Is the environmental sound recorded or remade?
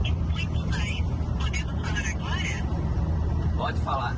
recorded